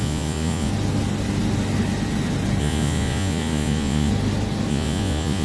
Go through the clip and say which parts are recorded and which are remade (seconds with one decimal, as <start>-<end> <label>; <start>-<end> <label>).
0.0-0.7 remade; 0.7-2.6 recorded; 2.6-4.1 remade; 4.1-4.7 recorded; 4.7-5.4 remade